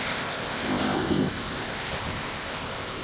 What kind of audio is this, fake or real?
fake